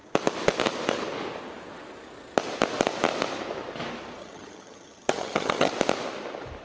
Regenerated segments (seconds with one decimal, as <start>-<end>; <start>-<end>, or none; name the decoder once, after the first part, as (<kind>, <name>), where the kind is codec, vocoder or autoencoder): 4.2-5.7 (vocoder, HiFi-GAN)